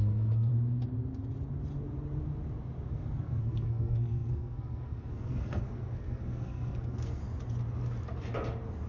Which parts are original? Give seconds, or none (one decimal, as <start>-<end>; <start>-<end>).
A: 0.5-2.9; 7.2-8.9